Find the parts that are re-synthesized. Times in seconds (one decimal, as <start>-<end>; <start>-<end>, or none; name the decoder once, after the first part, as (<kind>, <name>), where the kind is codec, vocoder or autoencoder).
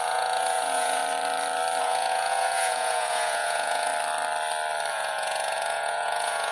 0.0-1.0 (vocoder, Vocos); 1.8-3.9; 4.9-6.5